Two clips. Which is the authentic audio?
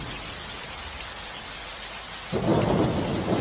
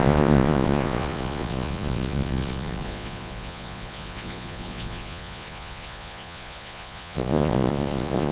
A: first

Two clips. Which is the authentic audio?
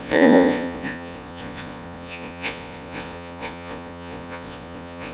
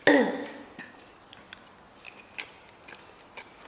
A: second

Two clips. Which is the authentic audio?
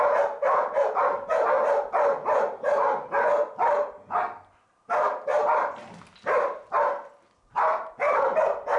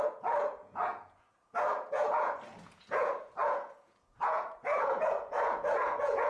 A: first